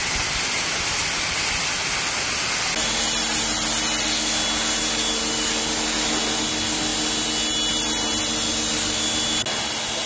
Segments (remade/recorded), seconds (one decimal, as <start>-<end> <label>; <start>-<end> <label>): 0.0-10.1 recorded